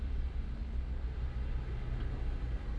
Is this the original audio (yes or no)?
yes